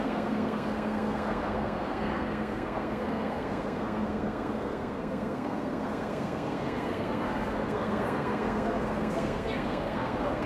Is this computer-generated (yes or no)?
yes